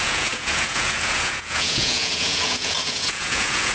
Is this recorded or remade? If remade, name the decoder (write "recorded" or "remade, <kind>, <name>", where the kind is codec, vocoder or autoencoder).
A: remade, vocoder, Vocos